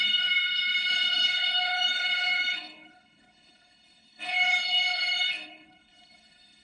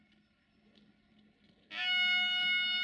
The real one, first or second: second